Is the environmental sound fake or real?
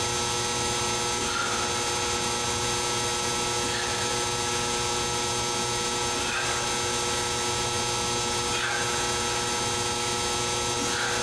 real